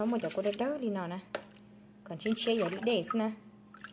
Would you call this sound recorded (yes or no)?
yes